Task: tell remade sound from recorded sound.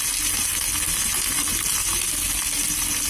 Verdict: recorded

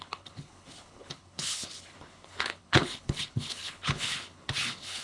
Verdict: remade